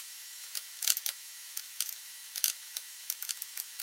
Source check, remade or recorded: remade